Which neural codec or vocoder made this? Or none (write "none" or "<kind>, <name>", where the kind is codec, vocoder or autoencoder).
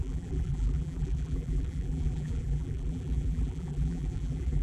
vocoder, BigVGAN v2